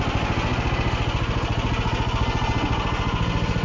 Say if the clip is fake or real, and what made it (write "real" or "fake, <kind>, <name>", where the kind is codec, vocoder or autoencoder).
real